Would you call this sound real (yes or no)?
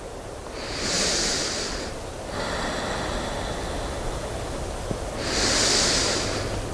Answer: yes